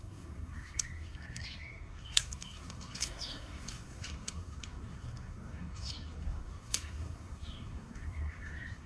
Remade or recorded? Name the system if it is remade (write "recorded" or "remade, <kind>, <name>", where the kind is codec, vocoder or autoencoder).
remade, codec, SNAC